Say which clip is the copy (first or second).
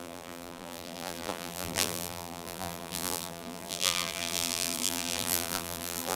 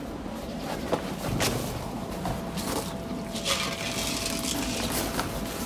first